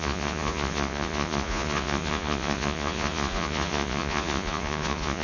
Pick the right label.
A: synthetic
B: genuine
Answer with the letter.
A